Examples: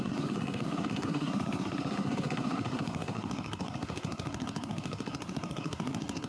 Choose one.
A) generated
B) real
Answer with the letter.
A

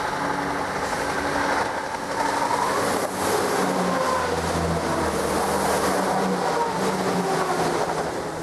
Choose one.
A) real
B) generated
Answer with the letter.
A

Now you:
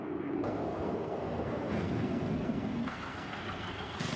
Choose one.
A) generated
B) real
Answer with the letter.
A